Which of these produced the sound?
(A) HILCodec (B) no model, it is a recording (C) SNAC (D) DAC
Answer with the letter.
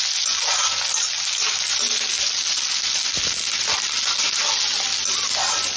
B